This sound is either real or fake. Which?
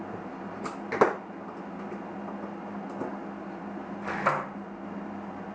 real